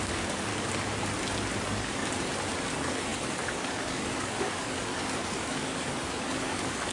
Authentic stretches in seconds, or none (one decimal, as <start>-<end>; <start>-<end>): 0.5-1.6; 2.0-2.7